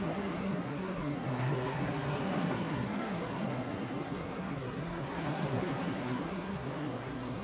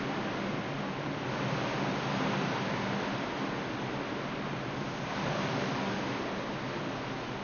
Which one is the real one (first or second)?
second